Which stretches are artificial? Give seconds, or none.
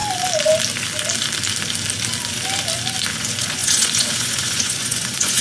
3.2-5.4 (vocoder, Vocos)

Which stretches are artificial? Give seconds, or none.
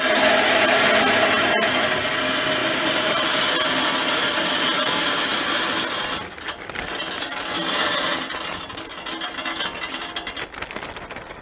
none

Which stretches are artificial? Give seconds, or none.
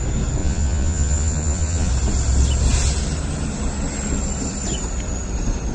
0.4-1.9 (vocoder, Vocos)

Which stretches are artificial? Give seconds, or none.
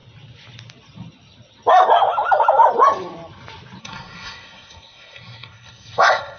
3.8-6.4 (codec, SNAC)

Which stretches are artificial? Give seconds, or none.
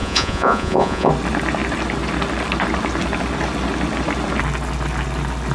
0.0-1.1 (vocoder, Vocos)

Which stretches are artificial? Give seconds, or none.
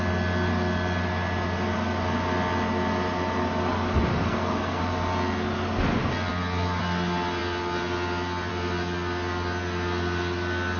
4.1-4.8 (codec, SNAC)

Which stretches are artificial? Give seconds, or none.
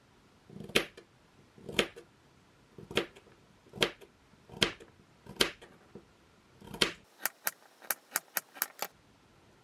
none